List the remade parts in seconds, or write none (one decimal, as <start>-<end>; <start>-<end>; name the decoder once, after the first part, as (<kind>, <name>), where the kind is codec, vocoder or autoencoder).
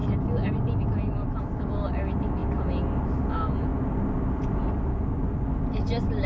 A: none